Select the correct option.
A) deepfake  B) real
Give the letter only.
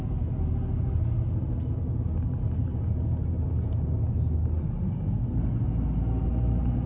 B